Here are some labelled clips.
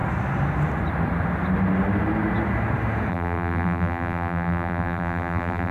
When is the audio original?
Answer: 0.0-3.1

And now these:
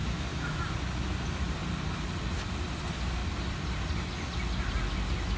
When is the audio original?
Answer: 0.6-5.4